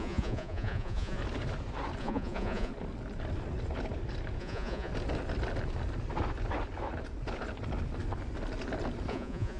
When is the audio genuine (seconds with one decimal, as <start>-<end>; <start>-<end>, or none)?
1.2-2.0; 2.7-4.4; 4.9-9.1